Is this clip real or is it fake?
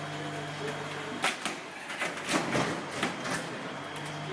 real